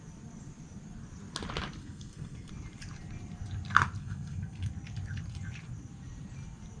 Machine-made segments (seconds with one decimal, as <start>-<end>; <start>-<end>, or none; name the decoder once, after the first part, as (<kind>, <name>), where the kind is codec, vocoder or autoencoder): 1.8-2.5 (codec, SNAC); 4.0-4.7